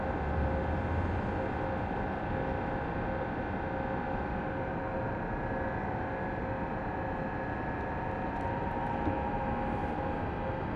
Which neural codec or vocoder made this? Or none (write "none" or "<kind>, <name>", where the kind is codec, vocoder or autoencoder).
none